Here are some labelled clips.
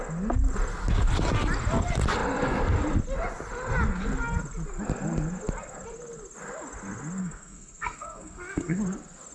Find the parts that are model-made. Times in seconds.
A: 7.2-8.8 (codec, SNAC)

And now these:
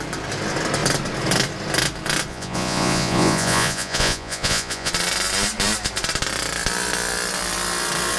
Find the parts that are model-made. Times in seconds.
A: 2.3-4.9 (vocoder, Vocos)

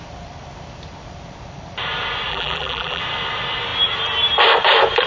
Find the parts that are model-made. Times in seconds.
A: 2.3-3.0 (vocoder, BigVGAN v2)